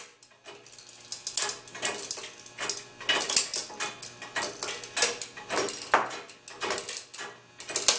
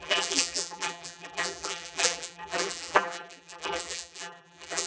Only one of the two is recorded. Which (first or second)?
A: first